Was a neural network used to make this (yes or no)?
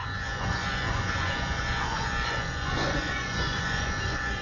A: yes